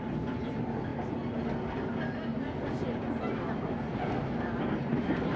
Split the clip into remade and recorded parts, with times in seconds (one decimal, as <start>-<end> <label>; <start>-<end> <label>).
0.0-5.4 recorded

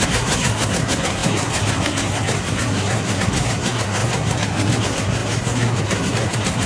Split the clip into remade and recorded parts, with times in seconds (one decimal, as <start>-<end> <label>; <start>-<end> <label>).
0.0-6.7 remade